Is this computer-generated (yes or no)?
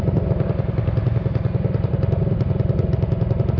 no